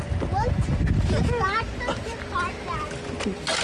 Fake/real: real